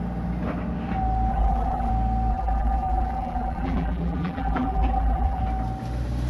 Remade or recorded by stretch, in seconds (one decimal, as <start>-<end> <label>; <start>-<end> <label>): 0.0-1.3 recorded; 1.3-1.9 remade; 1.9-2.3 recorded; 2.3-5.4 remade; 5.4-6.3 recorded